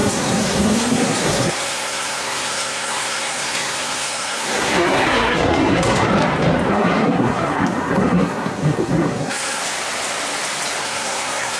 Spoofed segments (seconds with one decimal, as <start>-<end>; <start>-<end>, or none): 0.0-6.1; 6.7-9.6; 10.8-11.6